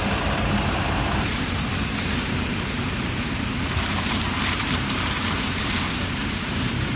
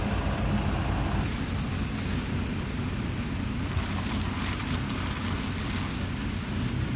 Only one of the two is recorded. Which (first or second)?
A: second